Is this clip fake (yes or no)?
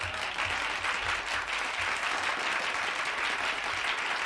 no